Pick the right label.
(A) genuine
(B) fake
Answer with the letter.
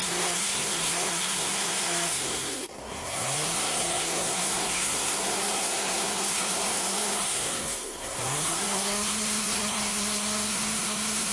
B